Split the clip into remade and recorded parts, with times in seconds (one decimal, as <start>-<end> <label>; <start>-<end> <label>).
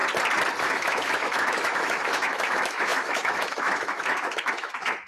0.0-0.6 recorded; 0.6-5.1 remade